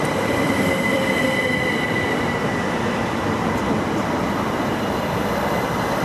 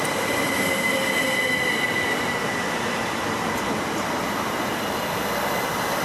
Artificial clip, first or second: first